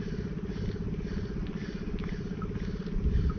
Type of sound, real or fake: real